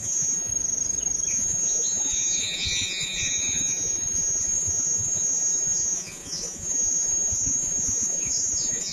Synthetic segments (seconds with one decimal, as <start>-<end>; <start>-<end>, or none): 0.0-0.5; 1.3-8.9